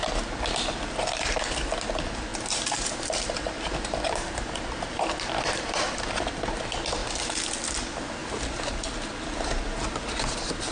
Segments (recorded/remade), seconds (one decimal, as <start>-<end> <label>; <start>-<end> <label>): 0.0-2.3 recorded; 2.3-6.0 remade; 6.0-8.2 recorded; 8.2-8.8 remade; 8.8-10.7 recorded